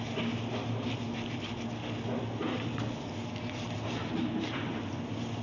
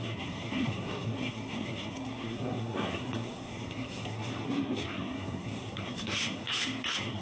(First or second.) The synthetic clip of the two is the second